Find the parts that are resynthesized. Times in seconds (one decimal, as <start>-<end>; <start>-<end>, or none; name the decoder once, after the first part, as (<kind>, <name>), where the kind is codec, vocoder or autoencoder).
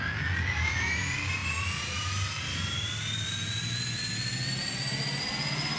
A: none